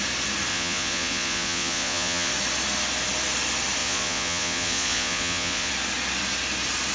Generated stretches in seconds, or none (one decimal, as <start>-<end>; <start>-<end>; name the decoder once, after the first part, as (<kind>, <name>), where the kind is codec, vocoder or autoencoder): 0.5-2.3 (vocoder, Vocos); 3.8-5.7